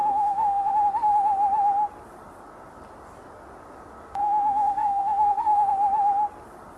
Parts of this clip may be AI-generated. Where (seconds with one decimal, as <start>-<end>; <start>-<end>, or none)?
0.0-0.7; 4.2-5.7